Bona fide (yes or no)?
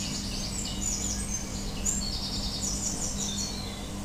yes